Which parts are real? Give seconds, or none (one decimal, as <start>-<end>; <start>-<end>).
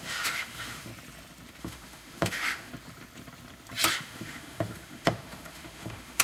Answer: 0.9-1.6; 2.7-3.9